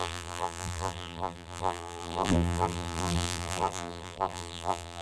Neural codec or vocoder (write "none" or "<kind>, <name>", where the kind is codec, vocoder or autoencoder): vocoder, BigVGAN v2